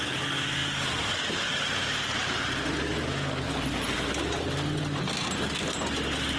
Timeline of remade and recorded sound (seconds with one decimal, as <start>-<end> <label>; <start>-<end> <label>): 0.0-6.4 recorded